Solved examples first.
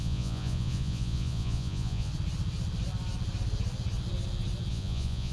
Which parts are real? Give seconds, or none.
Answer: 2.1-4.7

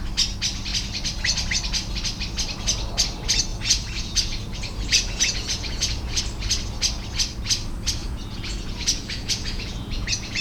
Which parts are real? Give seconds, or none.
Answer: 0.0-3.5; 6.2-8.0

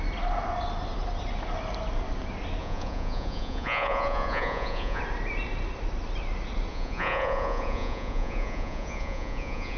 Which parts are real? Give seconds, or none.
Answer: 0.0-2.6; 5.0-6.7

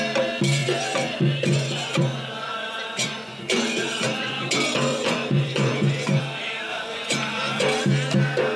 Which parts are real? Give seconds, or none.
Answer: 0.0-0.6; 4.5-4.9; 6.2-6.7; 7.6-8.6

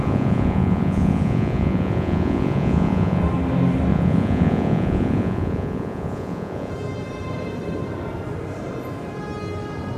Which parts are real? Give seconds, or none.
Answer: 3.2-3.9; 6.7-10.0

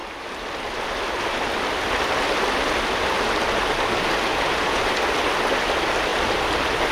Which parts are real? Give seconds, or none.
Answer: 0.0-4.3; 4.8-6.9

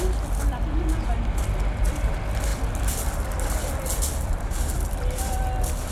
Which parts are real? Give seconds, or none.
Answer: 0.0-5.9